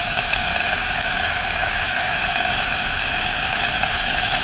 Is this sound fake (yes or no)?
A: yes